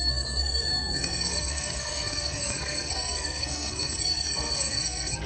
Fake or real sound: fake